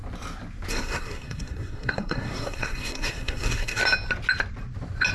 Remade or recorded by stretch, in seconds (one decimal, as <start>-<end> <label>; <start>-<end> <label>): 0.0-0.7 recorded; 0.7-3.8 remade; 3.8-5.1 recorded